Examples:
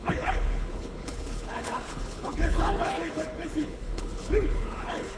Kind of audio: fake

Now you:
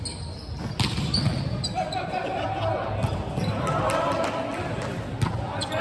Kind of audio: real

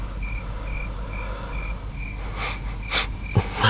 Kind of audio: real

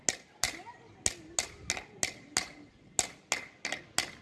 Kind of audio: real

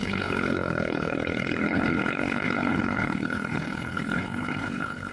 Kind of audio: fake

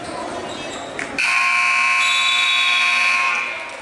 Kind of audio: real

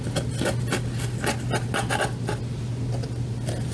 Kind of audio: real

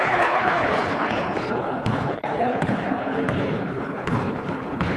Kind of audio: fake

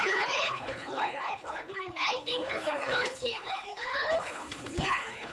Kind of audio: fake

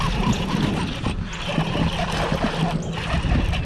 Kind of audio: real